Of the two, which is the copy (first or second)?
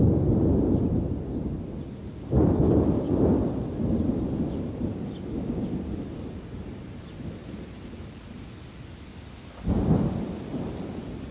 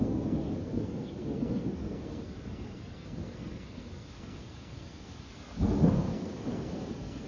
second